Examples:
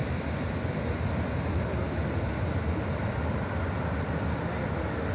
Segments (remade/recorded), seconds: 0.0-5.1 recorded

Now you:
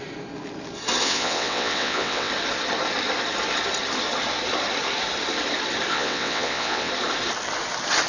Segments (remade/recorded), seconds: 0.0-1.0 recorded; 1.0-2.3 remade; 2.3-5.9 recorded; 5.9-6.9 remade; 6.9-8.1 recorded

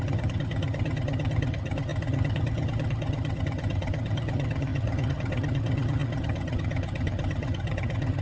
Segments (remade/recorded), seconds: 0.0-8.2 remade

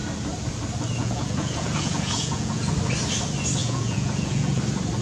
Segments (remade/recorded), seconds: 0.0-1.0 recorded; 1.0-2.7 remade; 2.7-3.6 recorded; 3.6-4.6 remade; 4.6-5.0 recorded

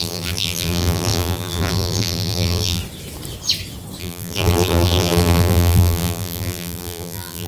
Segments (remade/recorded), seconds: 0.0-2.8 remade; 2.8-4.0 recorded; 4.0-7.5 remade

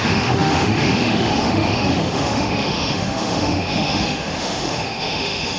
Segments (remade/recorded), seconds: 0.0-5.6 remade

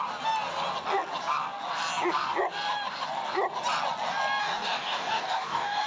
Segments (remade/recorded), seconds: 0.0-4.4 recorded; 4.4-5.9 remade